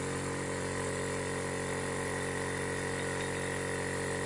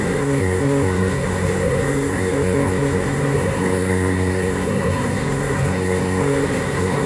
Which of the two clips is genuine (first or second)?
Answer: first